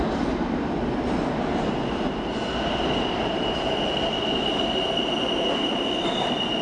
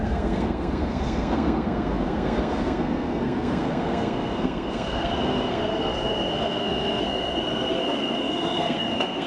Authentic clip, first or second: first